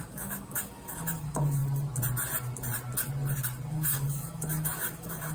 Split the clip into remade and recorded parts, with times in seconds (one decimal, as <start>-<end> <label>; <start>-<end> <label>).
0.0-1.6 remade; 1.6-3.7 recorded; 3.7-5.3 remade